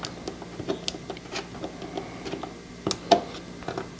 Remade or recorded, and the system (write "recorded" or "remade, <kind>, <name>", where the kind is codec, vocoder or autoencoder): recorded